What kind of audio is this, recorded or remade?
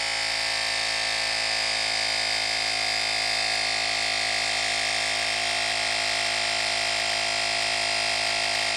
recorded